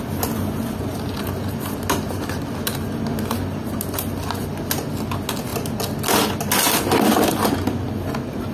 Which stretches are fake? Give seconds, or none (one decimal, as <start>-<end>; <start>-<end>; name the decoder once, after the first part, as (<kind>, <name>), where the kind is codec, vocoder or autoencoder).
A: none